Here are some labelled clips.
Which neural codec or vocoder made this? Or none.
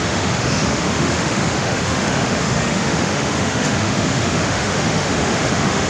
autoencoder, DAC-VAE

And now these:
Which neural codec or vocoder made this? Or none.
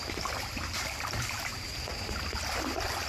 none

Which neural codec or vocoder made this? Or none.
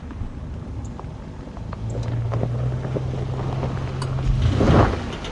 none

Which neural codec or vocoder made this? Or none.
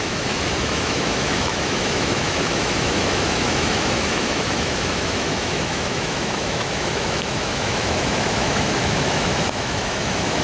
autoencoder, DAC-VAE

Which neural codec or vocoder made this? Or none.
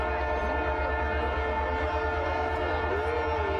none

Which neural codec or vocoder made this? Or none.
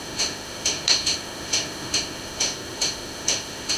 autoencoder, DAC-VAE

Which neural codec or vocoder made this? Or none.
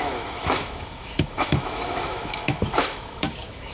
autoencoder, DAC-VAE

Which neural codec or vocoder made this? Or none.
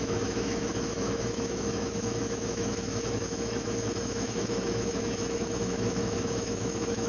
autoencoder, DAC-VAE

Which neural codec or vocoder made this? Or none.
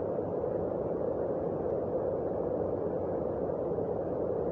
none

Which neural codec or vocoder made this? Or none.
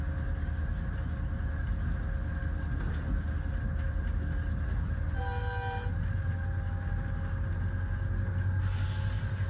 none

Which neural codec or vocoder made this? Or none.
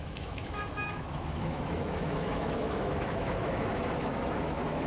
autoencoder, DAC-VAE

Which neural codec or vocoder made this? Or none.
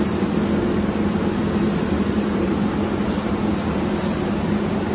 none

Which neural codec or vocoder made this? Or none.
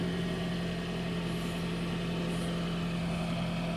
none